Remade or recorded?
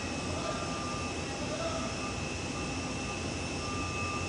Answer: recorded